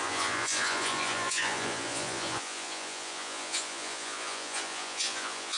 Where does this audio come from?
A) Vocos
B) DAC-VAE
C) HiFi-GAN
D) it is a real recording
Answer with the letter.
A